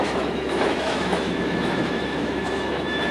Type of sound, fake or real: fake